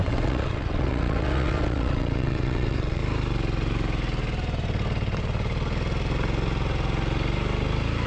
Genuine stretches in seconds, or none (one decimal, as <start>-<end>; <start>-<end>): 3.0-8.1